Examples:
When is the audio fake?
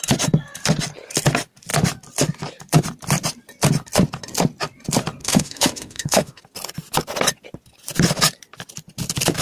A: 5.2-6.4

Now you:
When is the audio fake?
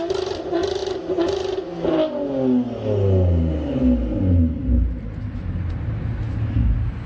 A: none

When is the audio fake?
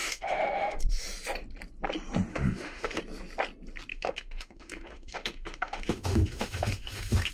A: 0.0-0.8; 2.3-3.0; 3.9-7.3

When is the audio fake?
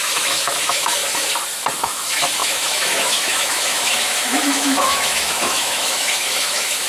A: 0.0-1.0; 1.8-6.9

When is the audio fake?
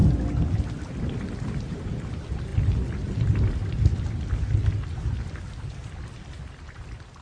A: none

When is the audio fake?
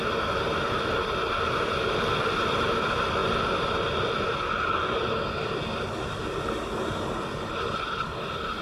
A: none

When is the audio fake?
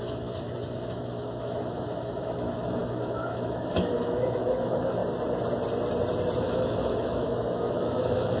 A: 0.0-5.0; 6.4-8.4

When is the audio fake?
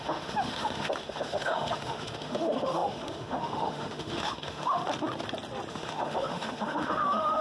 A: 0.0-4.8; 5.7-7.4